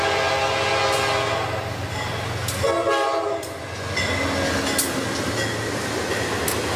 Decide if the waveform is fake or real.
real